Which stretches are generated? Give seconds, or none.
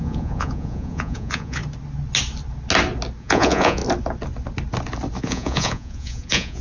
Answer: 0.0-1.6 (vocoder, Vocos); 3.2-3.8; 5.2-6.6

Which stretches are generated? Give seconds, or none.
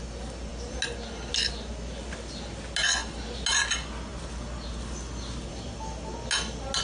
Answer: none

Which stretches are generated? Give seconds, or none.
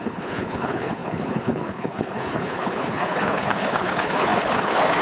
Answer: 0.0-5.0 (codec, HILCodec)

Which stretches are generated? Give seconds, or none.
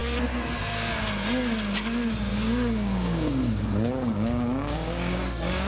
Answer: 2.3-5.7 (codec, DAC)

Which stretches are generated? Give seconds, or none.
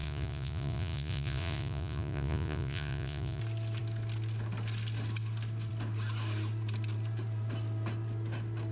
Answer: 0.0-3.4 (vocoder, Vocos)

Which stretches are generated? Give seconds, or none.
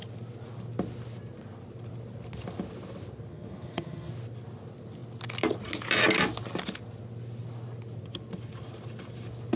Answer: 3.3-4.1 (vocoder, HiFi-GAN)